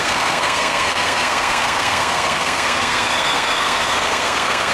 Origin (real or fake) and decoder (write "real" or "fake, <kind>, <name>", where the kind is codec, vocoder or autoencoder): fake, codec, SNAC